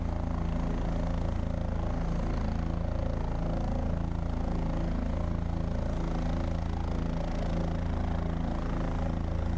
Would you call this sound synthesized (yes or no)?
no